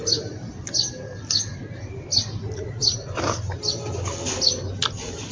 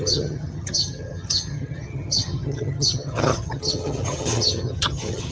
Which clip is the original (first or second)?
first